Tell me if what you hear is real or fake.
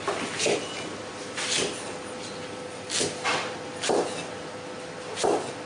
real